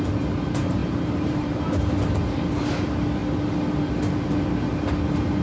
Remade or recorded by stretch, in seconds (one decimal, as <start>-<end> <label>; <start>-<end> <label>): 0.0-0.8 recorded; 0.8-1.6 remade; 1.6-5.4 recorded